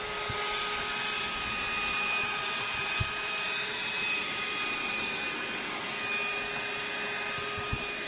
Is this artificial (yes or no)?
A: no